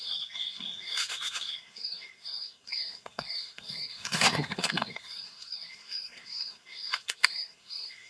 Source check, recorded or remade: remade